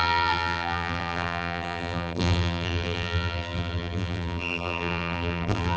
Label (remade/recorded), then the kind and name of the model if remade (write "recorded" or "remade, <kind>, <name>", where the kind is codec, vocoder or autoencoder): remade, vocoder, BigVGAN v2